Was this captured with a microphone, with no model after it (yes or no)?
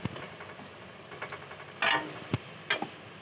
yes